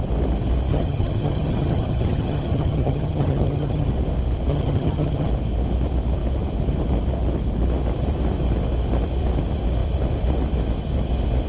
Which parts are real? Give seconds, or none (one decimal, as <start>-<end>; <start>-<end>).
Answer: 0.0-0.7; 3.9-4.5; 5.3-11.5